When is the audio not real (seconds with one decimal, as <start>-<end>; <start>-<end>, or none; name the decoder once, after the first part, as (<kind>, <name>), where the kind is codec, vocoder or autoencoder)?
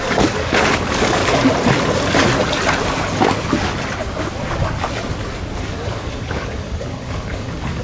0.0-1.2 (codec, DAC); 5.6-7.8